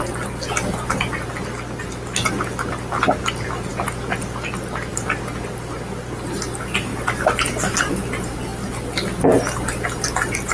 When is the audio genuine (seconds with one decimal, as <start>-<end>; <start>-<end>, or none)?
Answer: 0.0-10.5